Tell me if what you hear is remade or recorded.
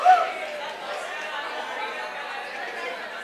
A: recorded